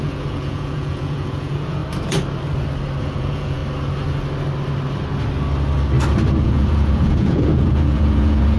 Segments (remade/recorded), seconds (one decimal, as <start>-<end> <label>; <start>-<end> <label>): 0.0-1.8 remade; 1.8-3.0 recorded; 3.0-3.6 remade; 3.6-6.4 recorded; 6.4-8.6 remade